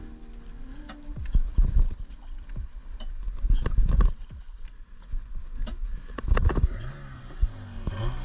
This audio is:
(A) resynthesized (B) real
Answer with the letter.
B